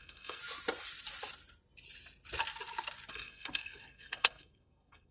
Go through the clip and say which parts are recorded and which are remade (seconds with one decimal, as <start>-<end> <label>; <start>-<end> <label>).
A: 0.0-0.4 remade; 0.4-3.1 recorded; 3.1-5.1 remade